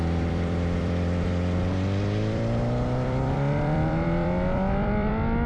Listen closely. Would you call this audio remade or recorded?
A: remade